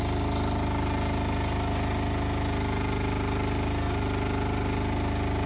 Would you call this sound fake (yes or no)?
no